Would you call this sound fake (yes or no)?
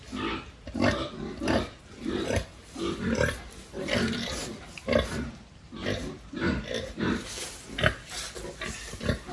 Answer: no